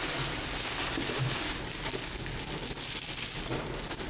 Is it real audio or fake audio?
real